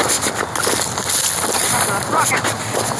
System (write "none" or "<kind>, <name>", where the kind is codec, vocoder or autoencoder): none